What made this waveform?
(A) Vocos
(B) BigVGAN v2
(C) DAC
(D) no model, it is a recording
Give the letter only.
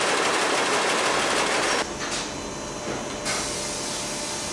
D